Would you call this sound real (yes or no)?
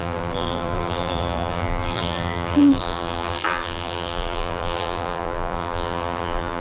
no